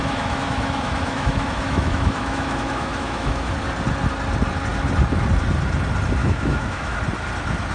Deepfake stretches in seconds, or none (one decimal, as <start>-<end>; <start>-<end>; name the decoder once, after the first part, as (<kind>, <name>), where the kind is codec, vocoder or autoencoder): 0.0-3.5 (autoencoder, DAC-VAE); 6.2-7.0